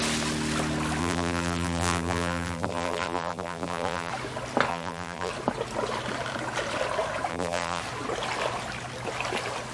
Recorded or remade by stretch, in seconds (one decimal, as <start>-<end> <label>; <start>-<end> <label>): 0.0-1.0 recorded; 1.0-4.1 remade; 4.1-4.7 recorded; 4.7-5.3 remade; 5.3-7.3 recorded; 7.3-7.8 remade; 7.8-9.7 recorded

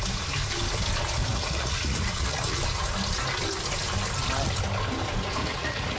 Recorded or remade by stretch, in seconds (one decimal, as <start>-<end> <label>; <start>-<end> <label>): 0.0-1.3 recorded; 1.3-2.6 remade; 2.6-5.4 recorded; 5.4-6.0 remade

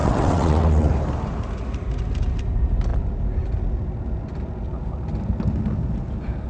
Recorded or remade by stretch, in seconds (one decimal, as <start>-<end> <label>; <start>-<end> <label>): 0.0-0.9 remade; 0.9-6.5 recorded

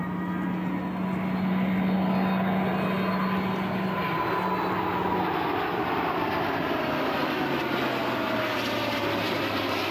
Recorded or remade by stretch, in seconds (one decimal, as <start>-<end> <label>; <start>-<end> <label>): 0.0-9.9 recorded

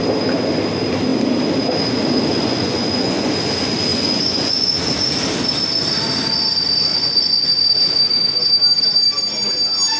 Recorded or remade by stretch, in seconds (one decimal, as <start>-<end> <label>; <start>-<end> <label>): 0.0-2.3 recorded; 2.3-3.3 remade; 3.3-3.9 recorded; 3.9-4.7 remade; 4.7-6.9 recorded; 6.9-7.5 remade; 7.5-10.0 recorded

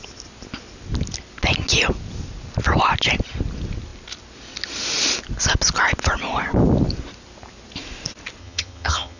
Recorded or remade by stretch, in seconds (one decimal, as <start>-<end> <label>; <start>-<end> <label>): 0.0-8.4 recorded; 8.4-9.2 remade